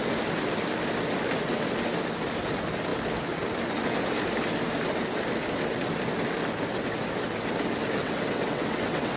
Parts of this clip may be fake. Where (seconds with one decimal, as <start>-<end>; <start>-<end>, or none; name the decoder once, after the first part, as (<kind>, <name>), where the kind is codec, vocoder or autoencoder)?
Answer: 8.0-9.2 (vocoder, WaveNeXt)